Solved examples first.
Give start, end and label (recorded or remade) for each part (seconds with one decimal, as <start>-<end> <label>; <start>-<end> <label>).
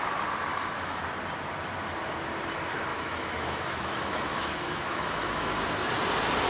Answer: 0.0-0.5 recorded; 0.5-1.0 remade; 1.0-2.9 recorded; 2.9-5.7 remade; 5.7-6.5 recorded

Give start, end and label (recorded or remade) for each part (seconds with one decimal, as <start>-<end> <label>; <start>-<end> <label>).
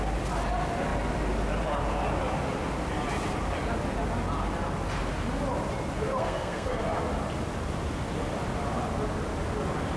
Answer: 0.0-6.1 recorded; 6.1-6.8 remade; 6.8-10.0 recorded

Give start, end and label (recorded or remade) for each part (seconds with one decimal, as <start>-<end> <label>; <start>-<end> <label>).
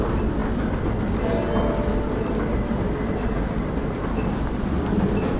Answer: 0.0-5.4 recorded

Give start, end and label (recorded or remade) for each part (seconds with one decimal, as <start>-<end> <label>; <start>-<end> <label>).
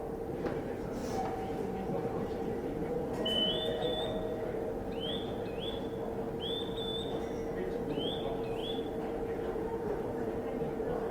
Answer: 0.0-1.0 recorded; 1.0-4.1 remade; 4.1-8.6 recorded; 8.6-10.3 remade; 10.3-11.1 recorded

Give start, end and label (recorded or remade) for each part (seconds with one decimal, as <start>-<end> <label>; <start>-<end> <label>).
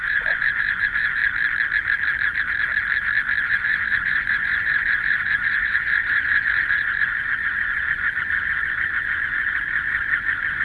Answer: 0.0-1.2 remade; 1.2-3.5 recorded; 3.5-10.6 remade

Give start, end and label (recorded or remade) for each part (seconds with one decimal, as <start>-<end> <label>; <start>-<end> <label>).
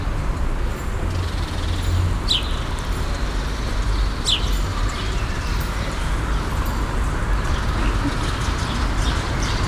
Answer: 0.0-4.7 recorded; 4.7-6.5 remade; 6.5-9.7 recorded